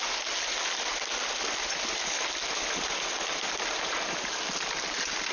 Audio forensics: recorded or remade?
recorded